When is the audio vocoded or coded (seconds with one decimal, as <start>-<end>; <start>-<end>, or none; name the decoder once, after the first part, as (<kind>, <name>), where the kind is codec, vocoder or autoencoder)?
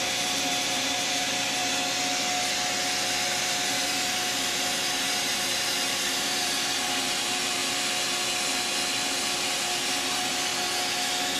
0.0-1.6 (vocoder, BigVGAN v2); 3.4-7.6; 9.1-10.5